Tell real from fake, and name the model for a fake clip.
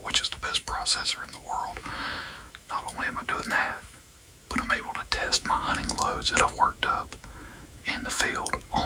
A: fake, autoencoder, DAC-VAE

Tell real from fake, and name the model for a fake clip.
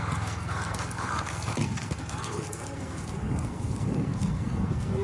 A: fake, codec, SNAC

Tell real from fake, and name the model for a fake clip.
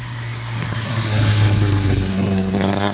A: fake, codec, SNAC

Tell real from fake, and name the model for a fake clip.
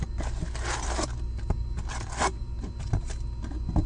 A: real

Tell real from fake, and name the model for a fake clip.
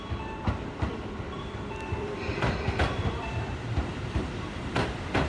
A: fake, vocoder, BigVGAN v2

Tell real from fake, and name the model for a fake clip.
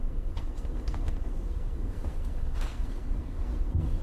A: fake, codec, SNAC